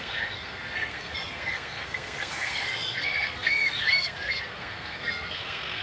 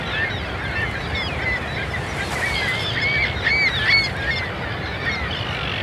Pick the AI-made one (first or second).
first